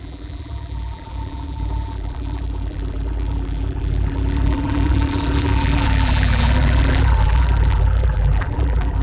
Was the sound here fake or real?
fake